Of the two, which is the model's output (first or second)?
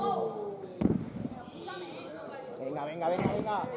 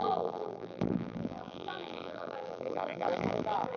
second